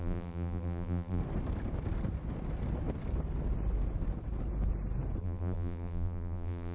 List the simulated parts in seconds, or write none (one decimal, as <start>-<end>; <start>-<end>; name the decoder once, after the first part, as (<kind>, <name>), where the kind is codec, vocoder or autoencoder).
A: 0.0-1.2 (vocoder, BigVGAN v2); 5.2-6.7